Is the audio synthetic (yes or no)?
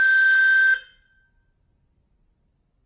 no